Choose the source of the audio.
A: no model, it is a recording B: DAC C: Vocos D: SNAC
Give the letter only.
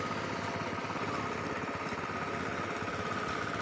A